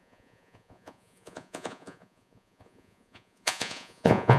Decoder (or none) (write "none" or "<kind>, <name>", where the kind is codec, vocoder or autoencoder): vocoder, Vocos